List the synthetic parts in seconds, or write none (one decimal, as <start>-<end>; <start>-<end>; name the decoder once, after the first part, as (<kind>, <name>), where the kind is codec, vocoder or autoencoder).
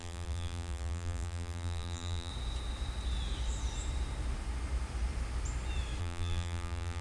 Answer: 0.0-2.3 (vocoder, BigVGAN v2); 6.0-7.0